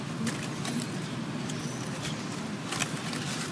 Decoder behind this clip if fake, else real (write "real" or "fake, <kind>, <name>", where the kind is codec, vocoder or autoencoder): real